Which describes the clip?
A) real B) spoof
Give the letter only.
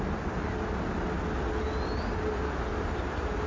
A